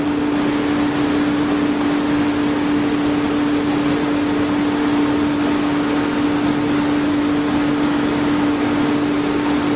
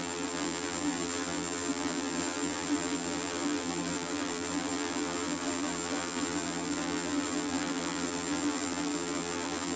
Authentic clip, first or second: first